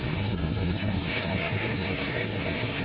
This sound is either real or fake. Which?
fake